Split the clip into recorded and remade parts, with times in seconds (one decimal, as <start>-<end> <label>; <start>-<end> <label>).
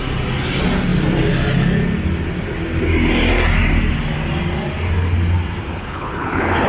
0.0-5.7 recorded; 5.7-6.7 remade